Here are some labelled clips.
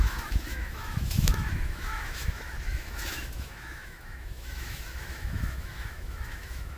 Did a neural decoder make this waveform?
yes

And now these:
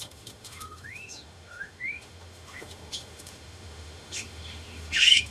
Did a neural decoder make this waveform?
yes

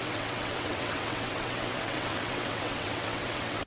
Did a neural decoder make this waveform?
yes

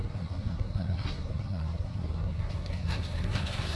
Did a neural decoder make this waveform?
yes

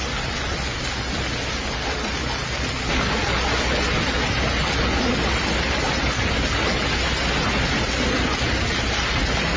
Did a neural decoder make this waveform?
no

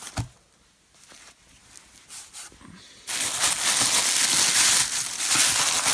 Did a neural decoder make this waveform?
no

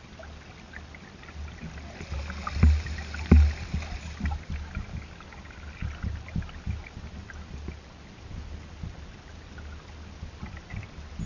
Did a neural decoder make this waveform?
no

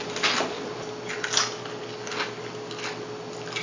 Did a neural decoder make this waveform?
no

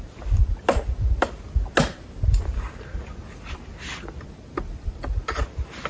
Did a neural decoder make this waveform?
no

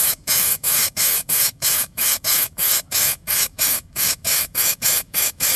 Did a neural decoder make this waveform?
yes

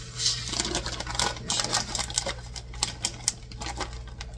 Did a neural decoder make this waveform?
no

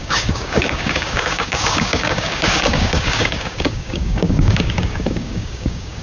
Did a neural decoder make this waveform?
yes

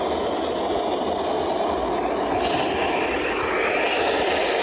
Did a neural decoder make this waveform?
no